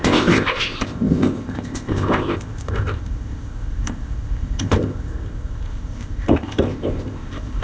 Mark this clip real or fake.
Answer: fake